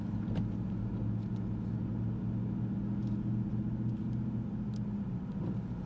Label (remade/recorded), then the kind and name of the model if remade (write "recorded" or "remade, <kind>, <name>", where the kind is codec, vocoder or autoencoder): recorded